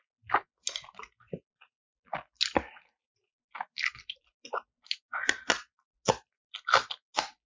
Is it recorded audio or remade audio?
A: recorded